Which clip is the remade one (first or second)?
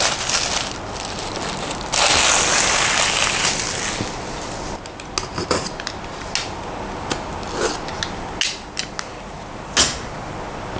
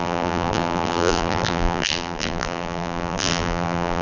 second